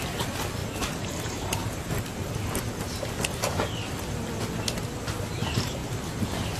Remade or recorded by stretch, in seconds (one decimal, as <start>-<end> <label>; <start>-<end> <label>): 0.0-0.6 recorded; 0.6-2.3 remade; 2.3-6.6 recorded